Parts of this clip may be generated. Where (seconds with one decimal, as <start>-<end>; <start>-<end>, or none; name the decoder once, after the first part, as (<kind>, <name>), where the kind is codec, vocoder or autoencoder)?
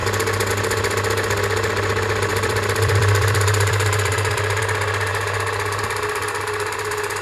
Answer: 2.3-4.6 (vocoder, BigVGAN v2)